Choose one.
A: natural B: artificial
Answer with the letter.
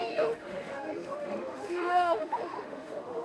B